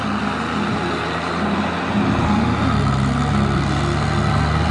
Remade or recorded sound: recorded